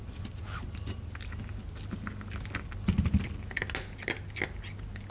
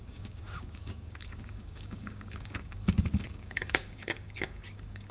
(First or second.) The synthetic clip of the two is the second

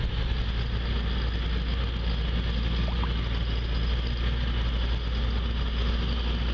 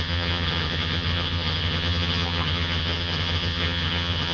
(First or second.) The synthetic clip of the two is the second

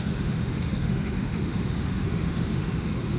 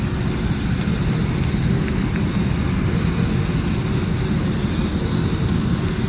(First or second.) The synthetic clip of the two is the first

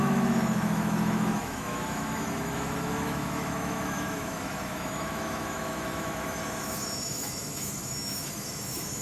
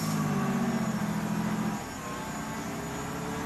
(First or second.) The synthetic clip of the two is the first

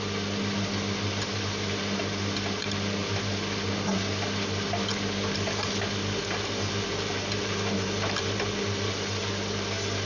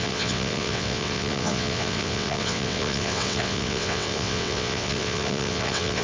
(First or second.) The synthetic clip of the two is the second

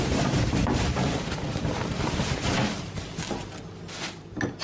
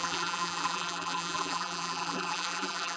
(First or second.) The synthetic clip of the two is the second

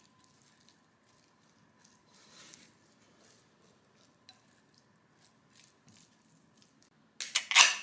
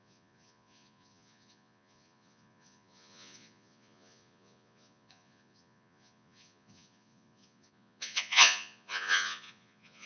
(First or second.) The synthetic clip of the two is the second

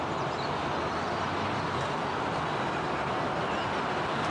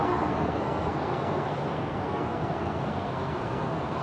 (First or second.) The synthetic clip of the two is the second